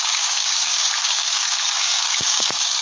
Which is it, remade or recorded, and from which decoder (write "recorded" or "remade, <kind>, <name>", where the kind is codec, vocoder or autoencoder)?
remade, codec, DAC